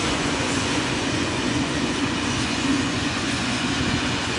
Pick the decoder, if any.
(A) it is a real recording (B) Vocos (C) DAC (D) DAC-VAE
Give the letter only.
B